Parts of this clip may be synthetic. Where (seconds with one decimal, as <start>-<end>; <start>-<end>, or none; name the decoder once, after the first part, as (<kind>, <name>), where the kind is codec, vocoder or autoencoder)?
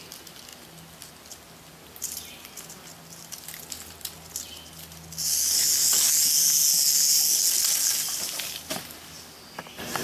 none